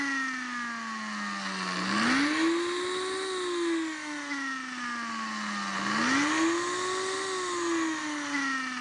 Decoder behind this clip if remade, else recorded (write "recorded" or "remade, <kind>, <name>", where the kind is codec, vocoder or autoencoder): recorded